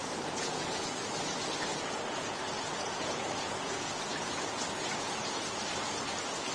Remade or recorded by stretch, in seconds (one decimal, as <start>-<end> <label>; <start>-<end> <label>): 0.0-1.0 remade; 1.0-1.7 recorded; 1.7-5.6 remade; 5.6-6.5 recorded